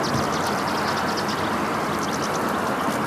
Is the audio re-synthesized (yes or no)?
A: no